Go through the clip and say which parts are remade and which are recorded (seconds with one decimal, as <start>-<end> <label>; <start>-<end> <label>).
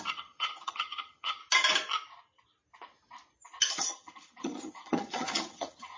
0.0-1.4 remade; 1.4-3.7 recorded; 3.7-6.0 remade